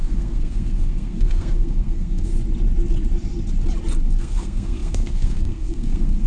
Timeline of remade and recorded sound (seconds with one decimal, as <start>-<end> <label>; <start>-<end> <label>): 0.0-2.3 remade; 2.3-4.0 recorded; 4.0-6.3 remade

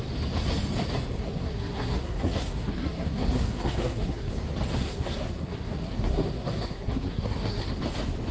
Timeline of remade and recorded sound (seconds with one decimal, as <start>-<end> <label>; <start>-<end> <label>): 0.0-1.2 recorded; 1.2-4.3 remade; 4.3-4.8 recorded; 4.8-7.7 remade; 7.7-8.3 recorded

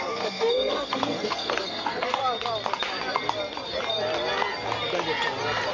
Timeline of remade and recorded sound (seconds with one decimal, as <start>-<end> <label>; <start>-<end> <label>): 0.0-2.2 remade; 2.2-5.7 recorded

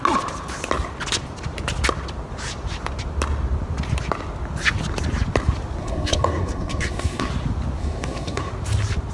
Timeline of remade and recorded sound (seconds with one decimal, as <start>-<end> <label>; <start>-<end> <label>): 0.0-5.8 recorded; 5.8-7.3 remade; 7.3-7.8 recorded; 7.8-8.5 remade; 8.5-9.1 recorded

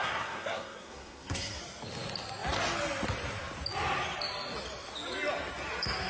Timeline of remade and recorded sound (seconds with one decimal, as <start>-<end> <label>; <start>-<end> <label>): 0.0-1.6 remade; 1.6-6.1 recorded

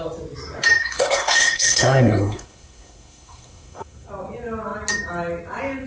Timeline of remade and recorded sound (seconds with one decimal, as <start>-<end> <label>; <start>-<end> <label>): 0.0-0.8 recorded; 0.8-4.1 remade; 4.1-5.9 recorded